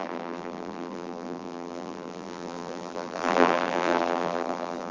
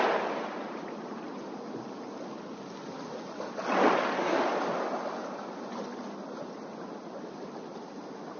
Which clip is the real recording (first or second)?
second